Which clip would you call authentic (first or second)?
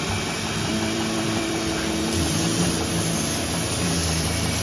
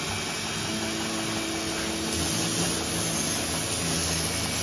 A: second